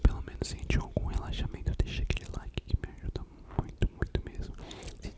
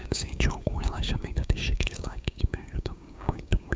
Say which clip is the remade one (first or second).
second